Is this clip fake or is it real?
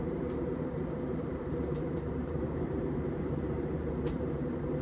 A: fake